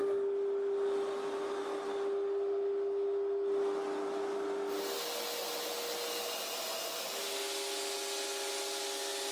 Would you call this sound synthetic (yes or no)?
no